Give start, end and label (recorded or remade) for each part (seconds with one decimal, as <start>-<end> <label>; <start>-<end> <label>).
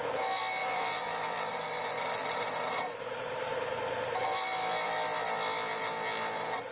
0.0-0.6 recorded; 0.6-3.0 remade; 3.0-6.7 recorded